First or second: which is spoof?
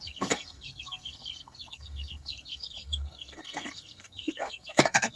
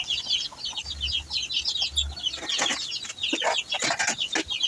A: first